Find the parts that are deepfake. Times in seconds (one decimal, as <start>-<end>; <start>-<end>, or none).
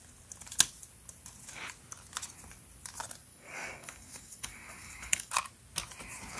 3.3-5.3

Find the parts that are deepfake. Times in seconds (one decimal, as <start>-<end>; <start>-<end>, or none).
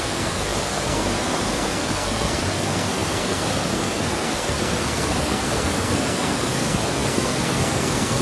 0.0-8.2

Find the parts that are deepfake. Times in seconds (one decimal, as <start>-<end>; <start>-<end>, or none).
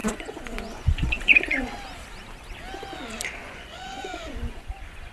0.0-1.7; 3.4-5.1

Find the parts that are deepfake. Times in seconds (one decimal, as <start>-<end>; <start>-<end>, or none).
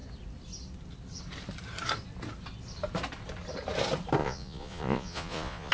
4.2-5.7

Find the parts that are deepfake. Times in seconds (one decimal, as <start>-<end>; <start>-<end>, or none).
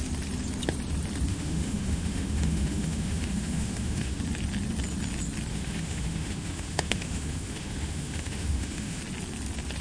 1.3-4.2; 5.5-9.0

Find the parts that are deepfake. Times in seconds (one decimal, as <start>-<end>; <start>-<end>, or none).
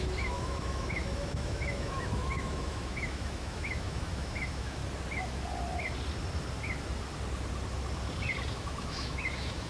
0.0-4.8; 8.5-9.7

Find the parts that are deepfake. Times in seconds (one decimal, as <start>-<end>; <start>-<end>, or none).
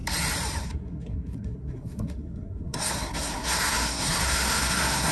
0.6-5.1